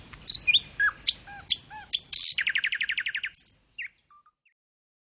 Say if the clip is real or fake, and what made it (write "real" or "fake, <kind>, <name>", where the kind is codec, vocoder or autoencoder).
real